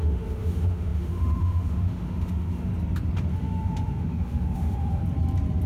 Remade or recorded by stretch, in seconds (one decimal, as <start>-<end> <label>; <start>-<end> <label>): 0.0-2.7 remade; 2.7-3.3 recorded; 3.3-5.0 remade; 5.0-5.7 recorded